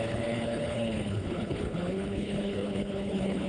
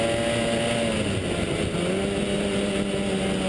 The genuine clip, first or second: second